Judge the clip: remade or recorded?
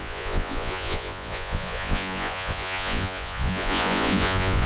remade